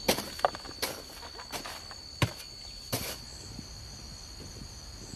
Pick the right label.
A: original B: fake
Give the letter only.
A